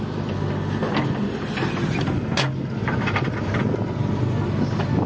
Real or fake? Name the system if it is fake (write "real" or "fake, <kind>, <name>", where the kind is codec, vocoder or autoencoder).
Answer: real